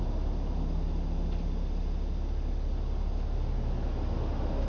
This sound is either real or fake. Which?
real